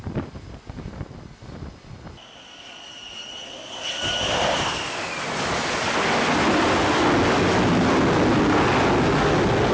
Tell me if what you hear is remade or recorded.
recorded